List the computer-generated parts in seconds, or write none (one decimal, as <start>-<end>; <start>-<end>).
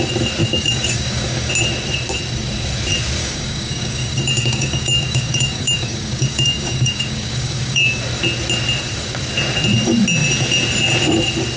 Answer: 0.4-1.5; 3.2-8.0